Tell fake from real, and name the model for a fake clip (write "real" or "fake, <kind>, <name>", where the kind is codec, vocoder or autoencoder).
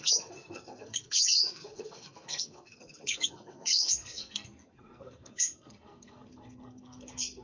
fake, codec, SNAC